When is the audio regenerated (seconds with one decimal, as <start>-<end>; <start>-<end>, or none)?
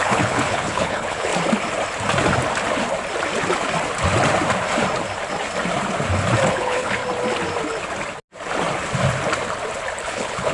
0.0-1.3; 6.5-7.0; 10.1-10.5